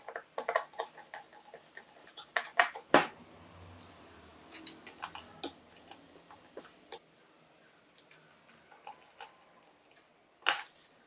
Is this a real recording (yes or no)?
yes